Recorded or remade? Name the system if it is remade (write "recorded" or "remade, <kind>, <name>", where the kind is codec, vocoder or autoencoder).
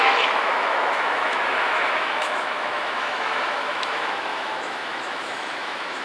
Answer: remade, autoencoder, DAC-VAE